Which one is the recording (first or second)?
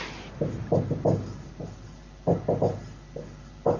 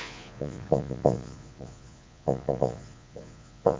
first